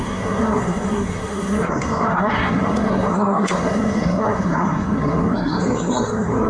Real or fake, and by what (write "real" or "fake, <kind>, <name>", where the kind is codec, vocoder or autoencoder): fake, codec, SNAC